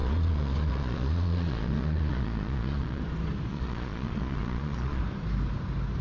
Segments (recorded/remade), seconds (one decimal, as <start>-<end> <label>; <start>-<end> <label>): 0.0-3.0 remade; 3.0-3.5 recorded; 3.5-5.0 remade; 5.0-6.0 recorded